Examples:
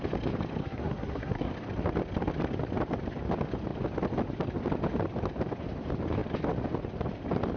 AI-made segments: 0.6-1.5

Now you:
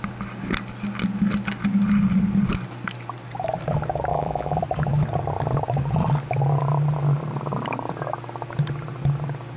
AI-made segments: 4.1-4.6

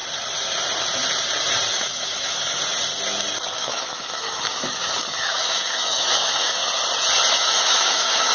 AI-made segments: 1.7-2.6; 3.5-6.6; 7.3-8.3

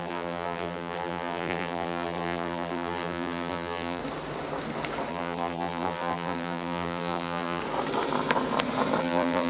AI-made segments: 0.0-4.0; 5.1-7.6; 9.0-9.5

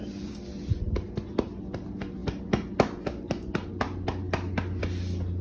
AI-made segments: none

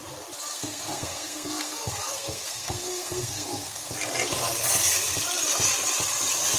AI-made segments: 0.5-3.9

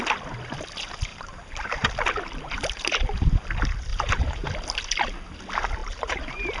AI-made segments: 1.1-1.9; 3.9-4.5; 5.8-6.6

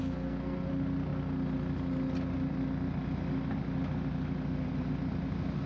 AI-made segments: 0.0-0.7